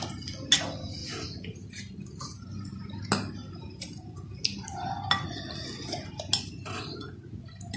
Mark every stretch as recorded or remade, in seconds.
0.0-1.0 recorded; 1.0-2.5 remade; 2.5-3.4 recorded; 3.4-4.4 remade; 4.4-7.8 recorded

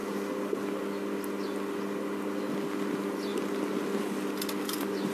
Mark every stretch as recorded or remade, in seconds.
0.0-2.9 recorded; 2.9-3.3 remade; 3.3-4.6 recorded; 4.6-5.1 remade

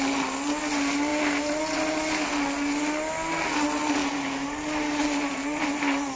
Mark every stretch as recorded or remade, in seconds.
0.0-1.1 recorded; 1.1-1.6 remade; 1.6-4.0 recorded; 4.0-6.2 remade

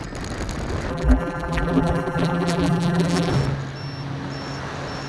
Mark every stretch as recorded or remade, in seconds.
0.0-0.9 recorded; 0.9-3.3 remade; 3.3-5.1 recorded

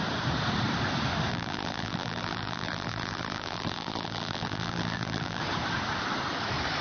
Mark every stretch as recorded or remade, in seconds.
0.0-1.3 recorded; 1.3-5.4 remade; 5.4-6.8 recorded

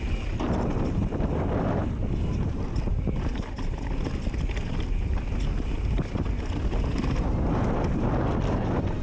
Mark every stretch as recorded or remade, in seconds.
0.0-2.9 recorded; 2.9-3.9 remade; 3.9-9.0 recorded

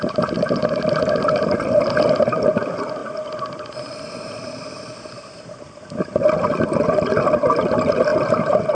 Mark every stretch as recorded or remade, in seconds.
0.0-3.0 remade; 3.0-4.4 recorded; 4.4-8.7 remade

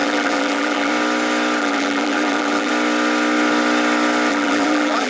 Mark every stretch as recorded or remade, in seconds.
0.0-0.9 remade; 0.9-1.6 recorded; 1.6-2.7 remade; 2.7-4.3 recorded; 4.3-5.1 remade